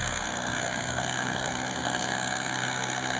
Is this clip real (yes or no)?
no